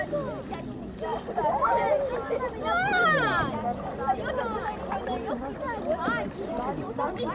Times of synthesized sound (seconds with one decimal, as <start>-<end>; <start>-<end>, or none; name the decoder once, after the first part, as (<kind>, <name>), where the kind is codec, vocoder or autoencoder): none